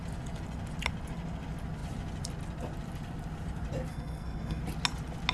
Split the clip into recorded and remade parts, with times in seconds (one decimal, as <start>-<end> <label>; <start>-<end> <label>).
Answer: 0.0-3.9 recorded; 3.9-4.6 remade; 4.6-5.3 recorded